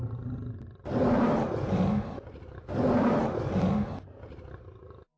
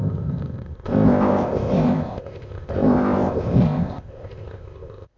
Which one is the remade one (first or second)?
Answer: second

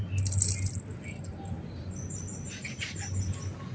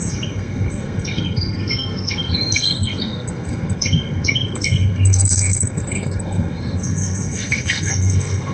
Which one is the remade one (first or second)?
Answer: second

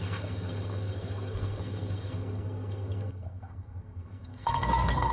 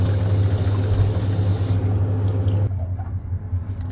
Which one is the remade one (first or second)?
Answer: first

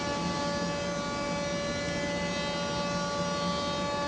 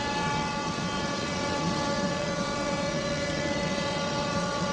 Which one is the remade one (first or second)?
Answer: second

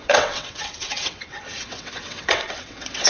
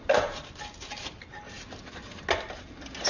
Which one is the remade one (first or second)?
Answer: first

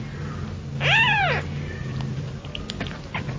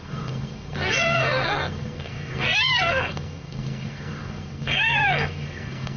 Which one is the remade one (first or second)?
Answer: second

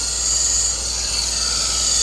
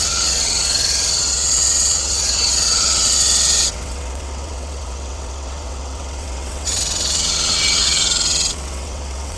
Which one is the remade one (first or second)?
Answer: second